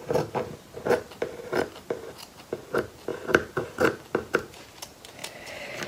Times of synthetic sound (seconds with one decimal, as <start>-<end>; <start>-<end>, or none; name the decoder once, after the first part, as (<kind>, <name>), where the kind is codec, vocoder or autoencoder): 5.2-5.9 (vocoder, BigVGAN v2)